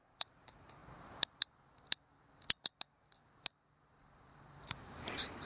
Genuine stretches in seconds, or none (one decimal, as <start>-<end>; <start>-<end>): 0.8-4.1